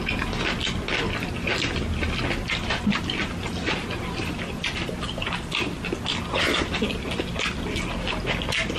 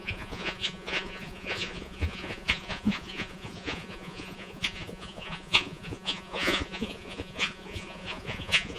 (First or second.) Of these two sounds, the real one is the first